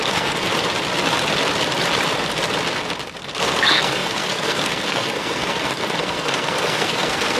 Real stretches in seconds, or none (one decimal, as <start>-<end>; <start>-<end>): 0.5-3.4